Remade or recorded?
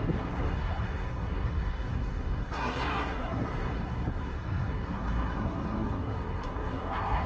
remade